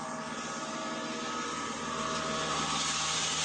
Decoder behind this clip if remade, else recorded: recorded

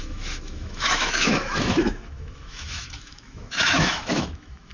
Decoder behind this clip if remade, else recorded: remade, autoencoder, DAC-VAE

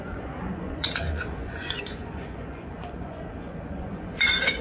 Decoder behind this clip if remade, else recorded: remade, vocoder, Vocos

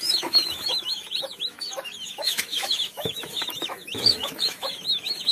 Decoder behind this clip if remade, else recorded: remade, autoencoder, DAC-VAE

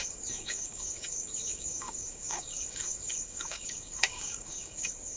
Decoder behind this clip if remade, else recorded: remade, codec, DAC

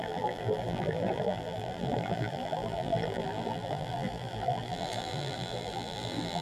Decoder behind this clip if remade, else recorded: remade, vocoder, BigVGAN v2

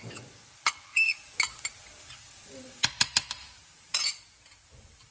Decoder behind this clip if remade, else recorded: recorded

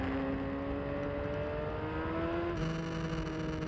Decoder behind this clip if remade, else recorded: recorded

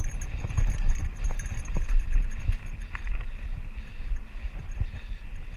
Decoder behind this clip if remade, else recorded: recorded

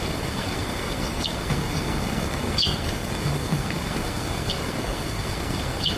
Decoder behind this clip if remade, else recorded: remade, codec, SNAC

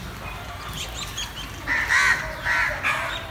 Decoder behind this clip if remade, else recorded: recorded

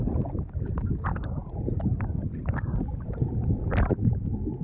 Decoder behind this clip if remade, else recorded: recorded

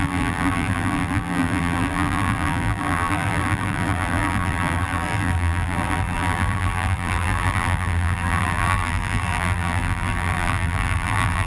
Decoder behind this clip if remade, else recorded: remade, vocoder, BigVGAN v2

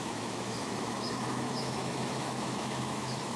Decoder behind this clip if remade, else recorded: remade, autoencoder, DAC-VAE